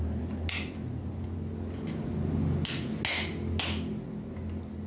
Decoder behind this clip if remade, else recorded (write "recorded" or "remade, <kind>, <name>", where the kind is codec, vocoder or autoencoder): recorded